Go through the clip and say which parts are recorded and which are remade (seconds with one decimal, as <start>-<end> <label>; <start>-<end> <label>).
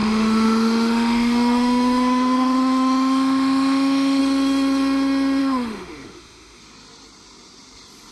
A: 0.0-4.2 remade; 4.2-5.4 recorded; 5.4-6.6 remade; 6.6-8.1 recorded